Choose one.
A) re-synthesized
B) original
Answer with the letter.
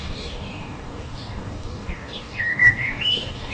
A